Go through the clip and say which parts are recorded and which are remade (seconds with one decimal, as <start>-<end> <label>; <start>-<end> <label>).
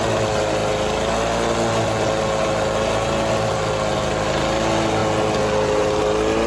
0.0-6.5 recorded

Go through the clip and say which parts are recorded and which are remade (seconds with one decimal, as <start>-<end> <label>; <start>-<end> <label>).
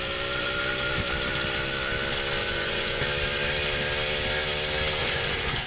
0.0-2.4 recorded; 2.4-3.0 remade; 3.0-5.0 recorded; 5.0-5.7 remade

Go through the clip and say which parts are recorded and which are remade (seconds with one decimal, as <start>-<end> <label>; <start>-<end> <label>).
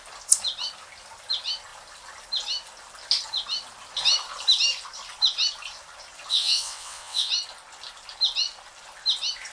0.0-6.3 recorded; 6.3-7.3 remade; 7.3-9.5 recorded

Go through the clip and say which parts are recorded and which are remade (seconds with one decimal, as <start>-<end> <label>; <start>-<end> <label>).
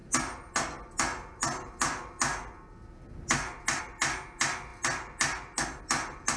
0.0-6.4 recorded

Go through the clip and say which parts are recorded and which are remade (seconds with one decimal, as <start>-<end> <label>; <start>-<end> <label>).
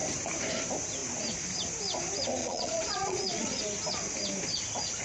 0.0-2.4 recorded; 2.4-3.6 remade; 3.6-5.0 recorded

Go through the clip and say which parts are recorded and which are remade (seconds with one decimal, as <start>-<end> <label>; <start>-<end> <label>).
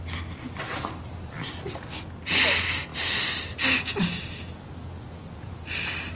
0.0-6.1 recorded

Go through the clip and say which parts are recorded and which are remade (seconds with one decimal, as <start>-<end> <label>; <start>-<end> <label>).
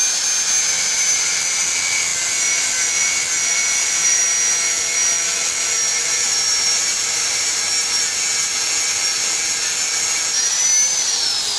0.0-3.5 recorded; 3.5-4.2 remade; 4.2-5.9 recorded; 5.9-7.6 remade; 7.6-11.6 recorded